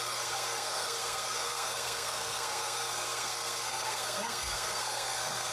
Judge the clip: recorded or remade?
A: remade